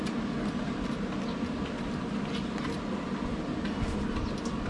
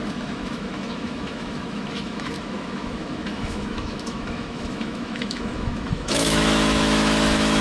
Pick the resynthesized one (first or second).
second